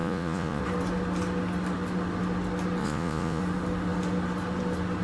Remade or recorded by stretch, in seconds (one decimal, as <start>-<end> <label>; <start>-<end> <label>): 0.0-0.6 remade; 0.6-2.8 recorded; 2.8-3.4 remade; 3.4-5.0 recorded